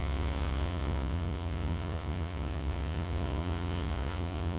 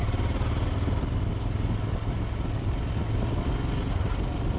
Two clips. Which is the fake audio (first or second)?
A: first